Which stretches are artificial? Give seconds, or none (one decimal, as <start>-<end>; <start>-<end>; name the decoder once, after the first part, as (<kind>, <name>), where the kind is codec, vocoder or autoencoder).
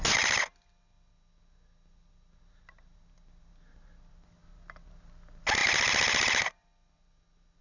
none